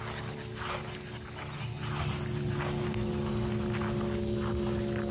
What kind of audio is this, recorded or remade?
recorded